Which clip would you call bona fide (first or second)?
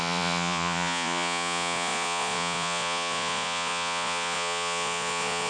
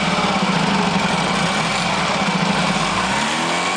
second